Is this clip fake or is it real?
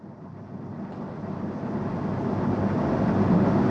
real